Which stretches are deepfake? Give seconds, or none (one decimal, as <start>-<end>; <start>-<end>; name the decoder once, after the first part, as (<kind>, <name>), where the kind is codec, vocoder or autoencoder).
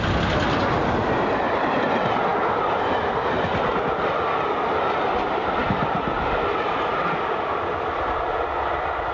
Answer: none